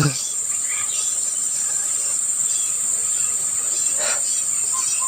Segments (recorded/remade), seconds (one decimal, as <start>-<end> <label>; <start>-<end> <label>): 0.0-2.4 remade; 2.4-3.0 recorded; 3.0-4.2 remade; 4.2-5.1 recorded